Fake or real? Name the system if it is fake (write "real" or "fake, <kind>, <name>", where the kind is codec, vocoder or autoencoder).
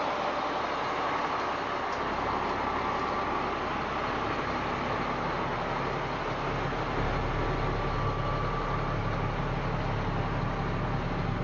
real